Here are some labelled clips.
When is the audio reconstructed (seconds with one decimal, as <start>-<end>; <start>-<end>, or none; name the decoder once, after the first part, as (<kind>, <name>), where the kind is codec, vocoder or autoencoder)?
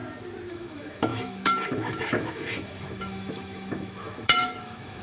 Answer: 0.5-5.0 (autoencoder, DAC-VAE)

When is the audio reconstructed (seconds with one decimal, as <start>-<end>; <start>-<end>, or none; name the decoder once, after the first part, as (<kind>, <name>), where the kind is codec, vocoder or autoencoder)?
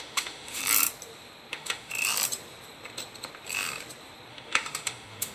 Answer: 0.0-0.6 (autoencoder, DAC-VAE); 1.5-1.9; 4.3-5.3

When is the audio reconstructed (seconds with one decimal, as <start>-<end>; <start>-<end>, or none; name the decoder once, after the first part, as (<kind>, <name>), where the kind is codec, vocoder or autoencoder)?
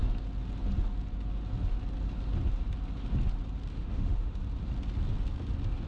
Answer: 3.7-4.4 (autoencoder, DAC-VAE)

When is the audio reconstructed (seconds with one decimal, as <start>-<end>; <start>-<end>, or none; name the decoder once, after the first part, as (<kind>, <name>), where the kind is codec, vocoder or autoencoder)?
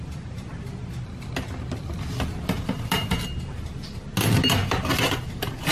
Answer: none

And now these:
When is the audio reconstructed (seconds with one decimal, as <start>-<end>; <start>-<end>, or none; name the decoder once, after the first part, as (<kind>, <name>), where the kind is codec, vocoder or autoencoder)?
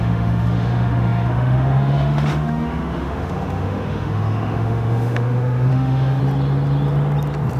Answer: 0.0-6.2 (autoencoder, DAC-VAE)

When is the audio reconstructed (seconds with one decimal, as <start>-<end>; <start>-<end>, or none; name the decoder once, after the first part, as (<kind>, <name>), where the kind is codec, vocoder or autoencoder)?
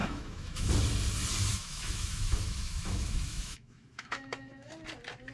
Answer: 0.0-0.7 (autoencoder, DAC-VAE); 1.5-4.7